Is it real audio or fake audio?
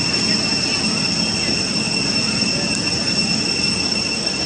real